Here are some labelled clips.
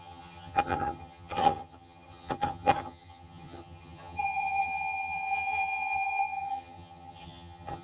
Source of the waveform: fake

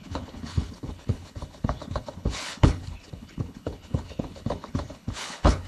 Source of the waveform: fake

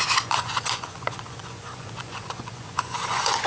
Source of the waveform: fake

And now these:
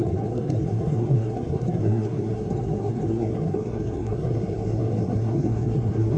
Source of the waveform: fake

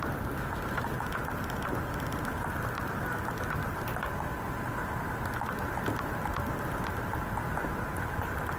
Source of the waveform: real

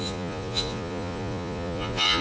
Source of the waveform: fake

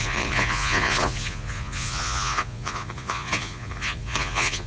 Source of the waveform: fake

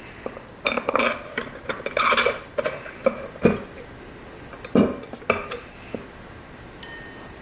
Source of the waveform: real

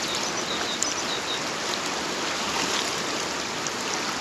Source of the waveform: real